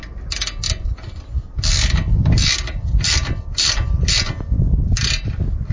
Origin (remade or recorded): recorded